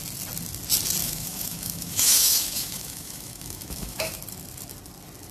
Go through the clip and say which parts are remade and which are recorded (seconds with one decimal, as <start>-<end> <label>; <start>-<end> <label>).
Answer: 0.0-1.0 recorded; 1.0-4.2 remade; 4.2-5.3 recorded